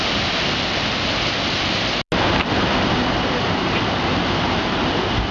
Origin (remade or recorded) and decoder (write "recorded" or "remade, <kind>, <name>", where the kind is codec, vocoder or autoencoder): recorded